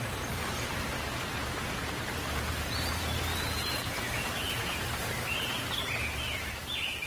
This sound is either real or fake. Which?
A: fake